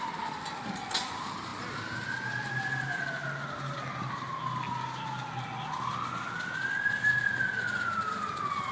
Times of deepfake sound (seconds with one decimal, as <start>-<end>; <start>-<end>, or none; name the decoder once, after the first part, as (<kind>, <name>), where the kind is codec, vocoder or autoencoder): none